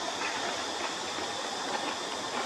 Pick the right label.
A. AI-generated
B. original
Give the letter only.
B